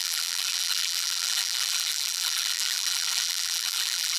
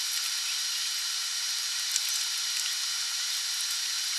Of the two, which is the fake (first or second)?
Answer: first